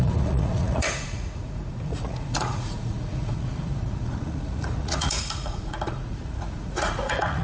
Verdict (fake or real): fake